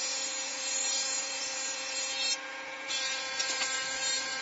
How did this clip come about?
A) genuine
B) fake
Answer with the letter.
B